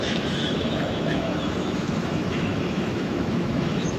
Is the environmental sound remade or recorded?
remade